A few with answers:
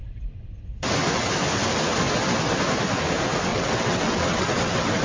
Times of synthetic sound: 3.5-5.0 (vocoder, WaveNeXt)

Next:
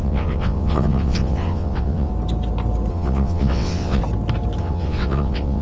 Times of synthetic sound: 0.0-2.1 (vocoder, WaveNeXt); 2.9-4.0; 4.6-5.6

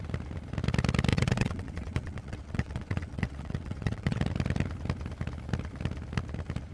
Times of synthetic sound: 1.1-4.2 (vocoder, WaveNeXt)

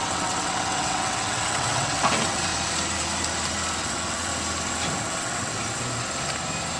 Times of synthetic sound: 0.0-2.5 (vocoder, WaveNeXt); 3.8-4.3; 5.1-5.5

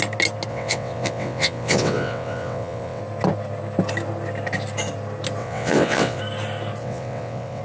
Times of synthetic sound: 0.5-3.0 (vocoder, WaveNeXt); 5.4-6.2; 6.8-7.6

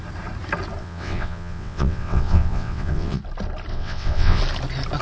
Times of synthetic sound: 0.8-3.2 (vocoder, WaveNeXt); 3.7-4.4